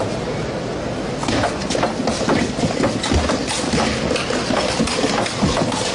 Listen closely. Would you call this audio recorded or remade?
recorded